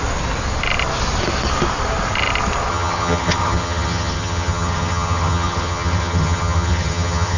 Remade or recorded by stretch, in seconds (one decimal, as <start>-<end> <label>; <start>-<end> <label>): 0.0-2.7 recorded; 2.7-7.4 remade